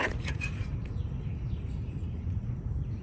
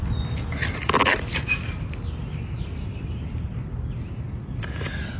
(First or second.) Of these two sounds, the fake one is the first